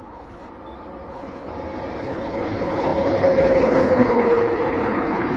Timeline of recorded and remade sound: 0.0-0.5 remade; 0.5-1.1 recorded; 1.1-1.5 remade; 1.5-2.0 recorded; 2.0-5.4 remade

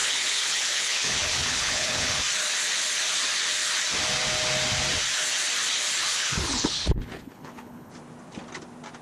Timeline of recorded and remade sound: 0.0-2.2 remade; 2.2-6.1 recorded; 6.1-7.9 remade; 7.9-9.0 recorded